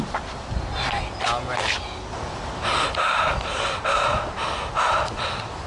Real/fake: real